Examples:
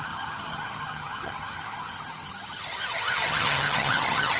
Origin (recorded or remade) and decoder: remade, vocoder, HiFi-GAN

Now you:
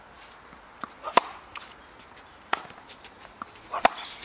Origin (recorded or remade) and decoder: recorded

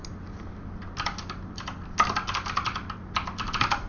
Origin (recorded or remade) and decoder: recorded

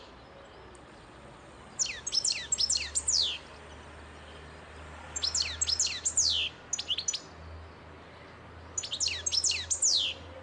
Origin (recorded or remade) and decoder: recorded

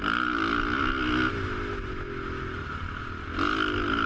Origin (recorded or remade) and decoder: recorded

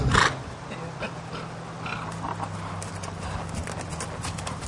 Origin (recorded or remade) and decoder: recorded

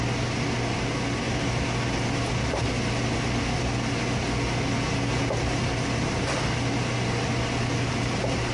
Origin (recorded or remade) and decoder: recorded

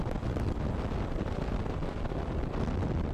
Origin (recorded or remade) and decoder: recorded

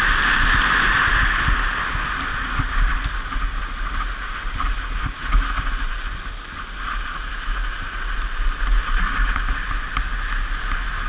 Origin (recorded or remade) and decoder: recorded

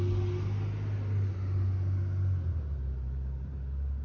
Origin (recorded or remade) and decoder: recorded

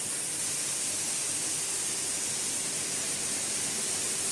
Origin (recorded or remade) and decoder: recorded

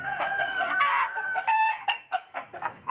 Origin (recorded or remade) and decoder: remade, codec, SNAC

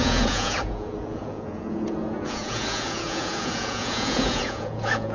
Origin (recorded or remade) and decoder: remade, vocoder, Vocos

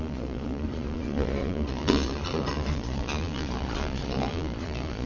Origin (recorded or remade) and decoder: remade, vocoder, Vocos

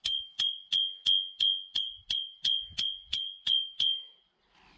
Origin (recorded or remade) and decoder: recorded